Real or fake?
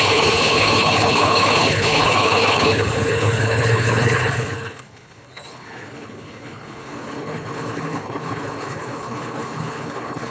fake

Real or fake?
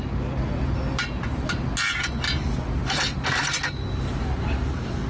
real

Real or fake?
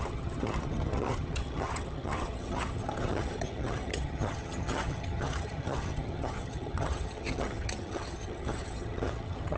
fake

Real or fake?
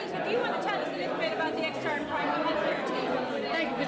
real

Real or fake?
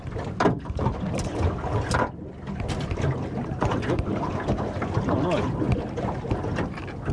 real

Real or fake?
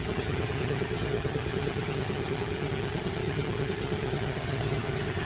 fake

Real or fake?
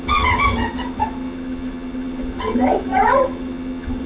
fake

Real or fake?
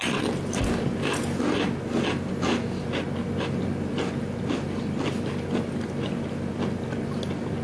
real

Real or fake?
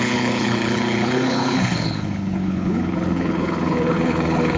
fake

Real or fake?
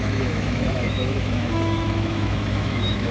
fake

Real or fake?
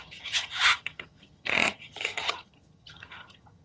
fake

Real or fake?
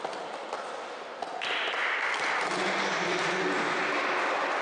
real